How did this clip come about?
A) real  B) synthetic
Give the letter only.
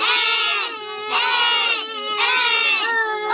A